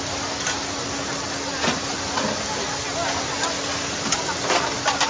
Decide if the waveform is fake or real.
real